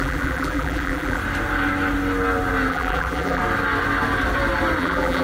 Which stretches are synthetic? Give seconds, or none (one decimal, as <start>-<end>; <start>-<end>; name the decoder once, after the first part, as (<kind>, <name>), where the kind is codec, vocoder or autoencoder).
0.0-1.2 (vocoder, BigVGAN v2); 2.7-3.4; 4.8-5.2